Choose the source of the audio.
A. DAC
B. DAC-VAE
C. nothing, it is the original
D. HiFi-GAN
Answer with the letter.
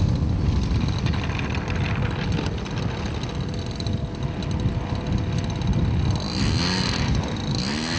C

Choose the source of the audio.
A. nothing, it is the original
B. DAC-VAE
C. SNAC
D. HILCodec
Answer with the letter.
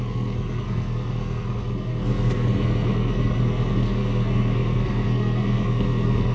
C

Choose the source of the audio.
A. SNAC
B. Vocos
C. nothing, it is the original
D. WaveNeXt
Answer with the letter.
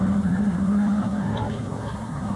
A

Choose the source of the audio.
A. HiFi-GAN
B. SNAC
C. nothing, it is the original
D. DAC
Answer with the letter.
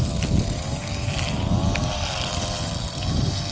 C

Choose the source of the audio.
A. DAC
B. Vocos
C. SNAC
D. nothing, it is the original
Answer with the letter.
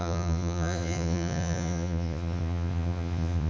B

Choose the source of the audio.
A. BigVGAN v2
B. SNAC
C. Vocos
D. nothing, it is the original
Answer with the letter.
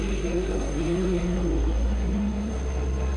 B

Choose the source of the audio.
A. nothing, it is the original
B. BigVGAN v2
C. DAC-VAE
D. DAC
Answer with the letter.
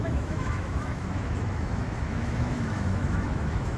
C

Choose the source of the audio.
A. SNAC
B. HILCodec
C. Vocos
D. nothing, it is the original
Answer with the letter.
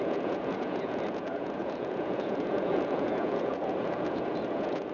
C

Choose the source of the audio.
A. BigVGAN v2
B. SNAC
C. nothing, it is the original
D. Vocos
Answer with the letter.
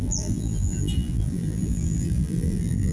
A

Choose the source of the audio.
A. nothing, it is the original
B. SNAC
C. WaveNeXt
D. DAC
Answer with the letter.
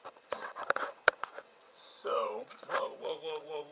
C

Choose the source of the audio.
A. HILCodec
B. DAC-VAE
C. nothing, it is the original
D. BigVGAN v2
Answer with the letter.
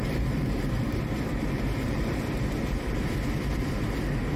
D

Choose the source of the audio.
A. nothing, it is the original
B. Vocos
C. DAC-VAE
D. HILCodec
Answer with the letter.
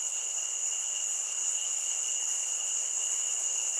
D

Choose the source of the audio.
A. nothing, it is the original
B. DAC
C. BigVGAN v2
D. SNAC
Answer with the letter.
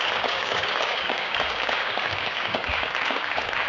B